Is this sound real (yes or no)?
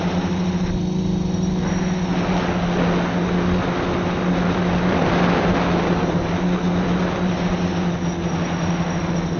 yes